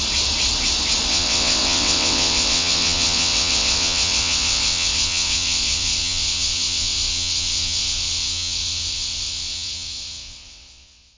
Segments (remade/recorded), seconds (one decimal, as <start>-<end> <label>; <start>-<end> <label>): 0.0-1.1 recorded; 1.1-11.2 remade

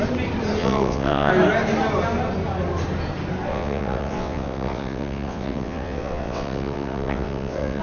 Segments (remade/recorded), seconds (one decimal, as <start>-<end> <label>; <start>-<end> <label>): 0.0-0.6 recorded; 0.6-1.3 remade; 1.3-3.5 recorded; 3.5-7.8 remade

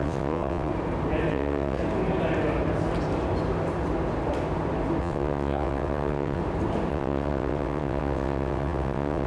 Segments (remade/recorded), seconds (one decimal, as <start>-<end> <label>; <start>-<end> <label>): 0.0-0.7 remade; 0.7-1.3 recorded; 1.3-1.8 remade; 1.8-5.0 recorded; 5.0-6.4 remade; 6.4-6.9 recorded; 6.9-9.3 remade

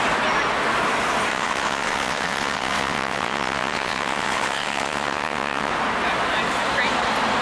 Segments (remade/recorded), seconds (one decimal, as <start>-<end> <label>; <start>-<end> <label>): 0.0-1.3 recorded; 1.3-5.7 remade; 5.7-7.4 recorded

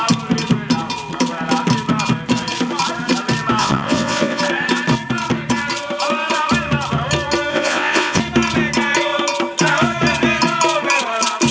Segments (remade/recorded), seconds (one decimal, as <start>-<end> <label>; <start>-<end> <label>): 0.0-3.6 recorded; 3.6-4.4 remade; 4.4-7.5 recorded; 7.5-8.2 remade; 8.2-11.5 recorded